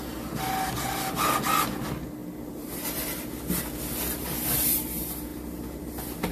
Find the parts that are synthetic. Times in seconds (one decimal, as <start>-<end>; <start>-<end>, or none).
none